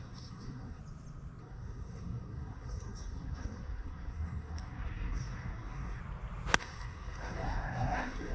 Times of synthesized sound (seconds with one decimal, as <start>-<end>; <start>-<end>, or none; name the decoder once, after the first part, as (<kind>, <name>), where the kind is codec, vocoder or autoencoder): 0.0-0.8 (codec, SNAC); 1.4-6.0; 6.6-8.3